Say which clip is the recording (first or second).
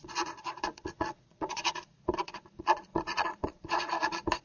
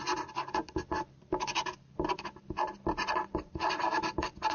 second